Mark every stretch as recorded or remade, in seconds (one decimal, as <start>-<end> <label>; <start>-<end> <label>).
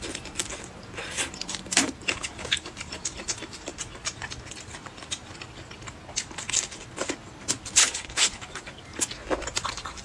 0.0-7.8 recorded; 7.8-8.4 remade; 8.4-10.0 recorded